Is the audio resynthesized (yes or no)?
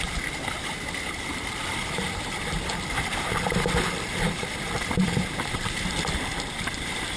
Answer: yes